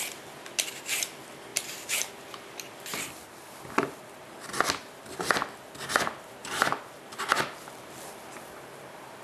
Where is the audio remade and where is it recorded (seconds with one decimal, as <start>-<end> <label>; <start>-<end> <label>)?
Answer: 0.0-1.5 recorded; 1.5-2.1 remade; 2.1-6.4 recorded; 6.4-7.0 remade; 7.0-9.2 recorded